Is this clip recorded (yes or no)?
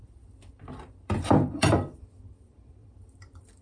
no